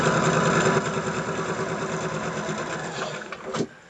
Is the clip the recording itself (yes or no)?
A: yes